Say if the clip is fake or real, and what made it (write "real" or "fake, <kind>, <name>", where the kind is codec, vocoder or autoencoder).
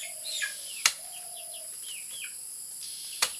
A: real